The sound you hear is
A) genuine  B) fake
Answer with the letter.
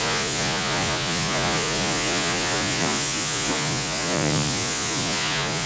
B